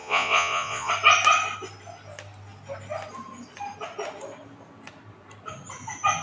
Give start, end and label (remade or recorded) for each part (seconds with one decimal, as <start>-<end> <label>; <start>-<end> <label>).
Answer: 0.0-0.9 remade; 0.9-6.2 recorded